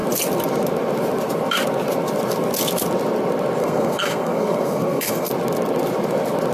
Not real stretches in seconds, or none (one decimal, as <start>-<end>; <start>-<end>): 3.6-5.3